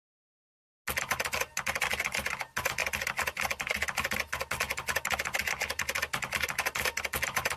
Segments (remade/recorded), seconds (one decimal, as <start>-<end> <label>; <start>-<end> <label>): 0.0-7.6 recorded